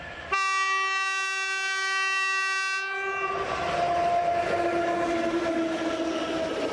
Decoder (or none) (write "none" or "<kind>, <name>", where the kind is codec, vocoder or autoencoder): none